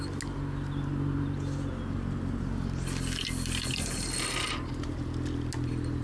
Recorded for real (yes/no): yes